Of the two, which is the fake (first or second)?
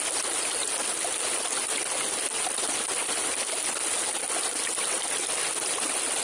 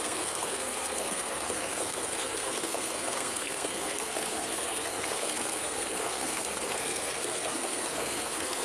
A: second